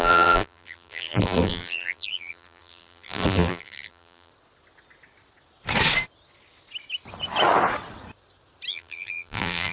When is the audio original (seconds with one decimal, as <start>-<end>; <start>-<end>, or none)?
4.3-8.7